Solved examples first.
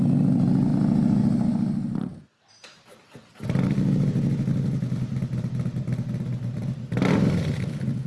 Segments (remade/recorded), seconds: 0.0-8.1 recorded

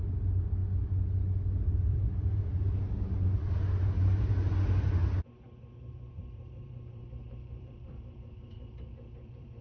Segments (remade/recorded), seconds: 0.0-5.0 recorded; 5.0-9.6 remade

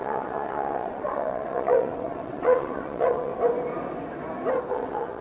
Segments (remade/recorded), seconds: 0.0-3.3 remade; 3.3-4.7 recorded; 4.7-5.2 remade

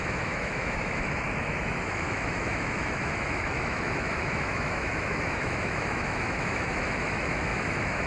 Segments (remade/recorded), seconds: 0.0-8.1 remade